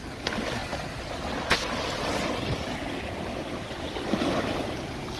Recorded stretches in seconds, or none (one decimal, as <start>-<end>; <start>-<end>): 0.0-5.2